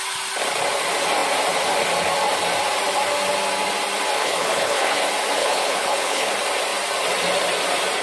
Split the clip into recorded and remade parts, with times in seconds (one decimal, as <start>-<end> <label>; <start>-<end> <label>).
0.0-4.2 recorded; 4.2-5.0 remade; 5.0-5.4 recorded; 5.4-6.3 remade; 6.3-8.0 recorded